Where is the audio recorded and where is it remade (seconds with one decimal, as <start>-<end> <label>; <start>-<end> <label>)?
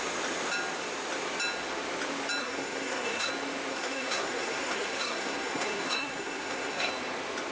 0.0-2.4 recorded; 2.4-3.3 remade; 3.3-3.7 recorded; 3.7-6.9 remade; 6.9-7.5 recorded